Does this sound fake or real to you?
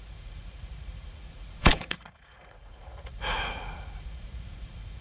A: fake